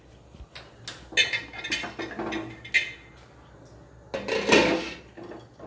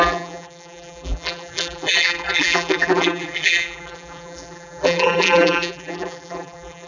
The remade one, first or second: second